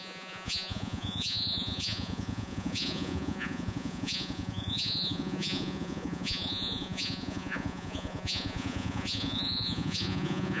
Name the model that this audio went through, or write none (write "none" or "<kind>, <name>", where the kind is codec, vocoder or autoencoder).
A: vocoder, Vocos